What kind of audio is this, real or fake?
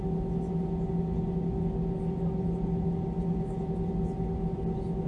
real